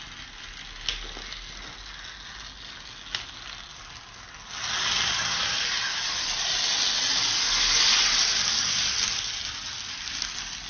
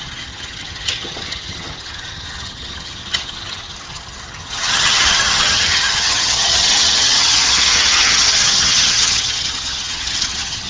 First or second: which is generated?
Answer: second